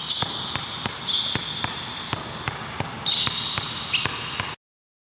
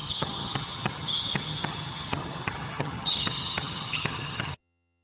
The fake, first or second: second